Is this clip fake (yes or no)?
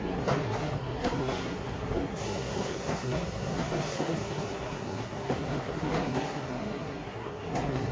yes